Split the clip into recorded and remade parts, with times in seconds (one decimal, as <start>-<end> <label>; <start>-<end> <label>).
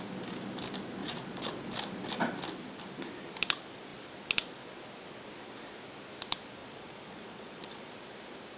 0.0-1.0 recorded; 1.0-1.7 remade; 1.7-6.6 recorded; 6.6-7.9 remade; 7.9-8.6 recorded